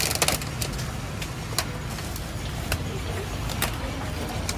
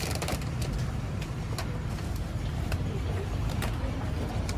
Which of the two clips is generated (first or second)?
second